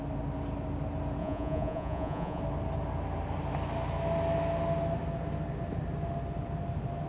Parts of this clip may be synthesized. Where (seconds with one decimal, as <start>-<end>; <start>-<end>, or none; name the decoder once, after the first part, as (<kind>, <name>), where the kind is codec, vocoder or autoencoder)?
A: 1.2-2.4 (vocoder, Vocos)